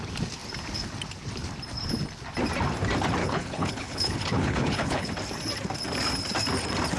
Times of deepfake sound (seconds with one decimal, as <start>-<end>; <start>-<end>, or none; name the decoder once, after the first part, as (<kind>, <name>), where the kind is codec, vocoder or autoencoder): 3.2-5.1 (codec, HILCodec)